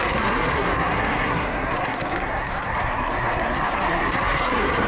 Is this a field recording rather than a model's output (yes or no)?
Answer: no